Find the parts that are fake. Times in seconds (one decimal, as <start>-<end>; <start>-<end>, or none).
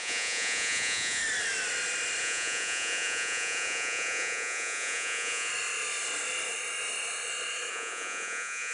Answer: 0.0-1.2; 2.2-5.5; 7.7-8.7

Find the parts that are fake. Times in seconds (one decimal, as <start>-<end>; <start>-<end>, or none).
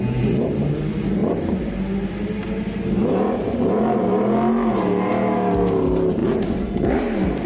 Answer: none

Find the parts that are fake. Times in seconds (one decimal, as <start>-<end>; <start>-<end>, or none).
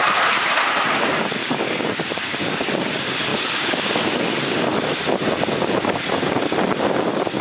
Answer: 1.4-2.5; 3.3-4.1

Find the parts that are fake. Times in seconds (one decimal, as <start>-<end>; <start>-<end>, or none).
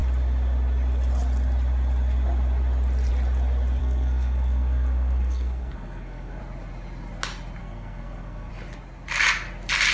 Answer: 3.8-6.4; 7.6-8.5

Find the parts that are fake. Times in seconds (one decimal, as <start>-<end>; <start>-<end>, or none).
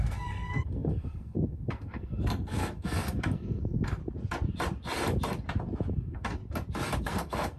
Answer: 0.0-4.0; 5.9-6.4; 7.0-7.6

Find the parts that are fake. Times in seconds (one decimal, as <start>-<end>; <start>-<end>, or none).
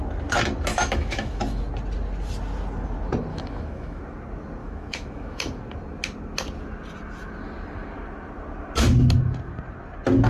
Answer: 0.7-1.6; 3.3-4.0; 4.6-5.6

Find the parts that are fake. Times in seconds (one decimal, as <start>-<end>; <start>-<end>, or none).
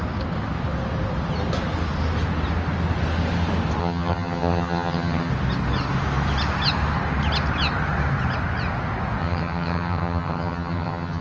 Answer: 3.8-5.3; 9.2-11.2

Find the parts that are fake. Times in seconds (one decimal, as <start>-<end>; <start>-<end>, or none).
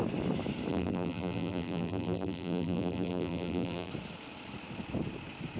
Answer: 0.7-3.9